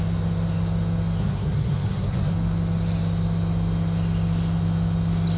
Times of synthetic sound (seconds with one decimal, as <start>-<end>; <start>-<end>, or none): 1.2-2.3